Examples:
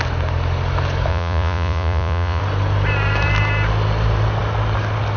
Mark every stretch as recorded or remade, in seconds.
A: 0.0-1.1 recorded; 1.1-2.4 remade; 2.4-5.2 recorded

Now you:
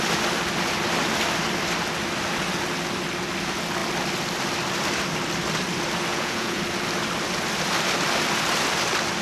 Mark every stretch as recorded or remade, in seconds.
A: 0.0-6.1 recorded; 6.1-6.6 remade; 6.6-9.2 recorded

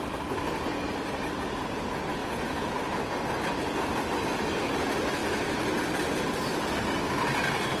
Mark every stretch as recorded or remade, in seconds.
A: 0.0-2.2 recorded; 2.2-2.7 remade; 2.7-7.8 recorded

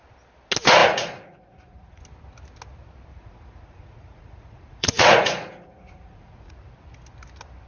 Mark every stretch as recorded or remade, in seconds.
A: 0.0-0.8 recorded; 0.8-2.0 remade; 2.0-3.1 recorded; 3.1-6.5 remade; 6.5-7.7 recorded

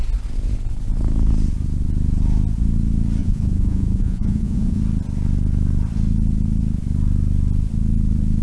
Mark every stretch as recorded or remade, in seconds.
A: 0.0-3.2 recorded; 3.2-4.8 remade; 4.8-8.4 recorded